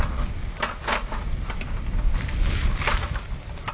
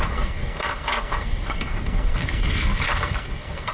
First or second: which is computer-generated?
second